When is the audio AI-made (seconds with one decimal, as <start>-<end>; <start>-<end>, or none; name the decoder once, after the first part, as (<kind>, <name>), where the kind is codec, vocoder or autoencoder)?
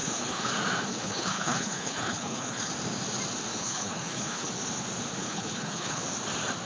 0.0-0.5 (codec, HILCodec); 0.9-2.7; 3.5-4.5; 5.2-6.0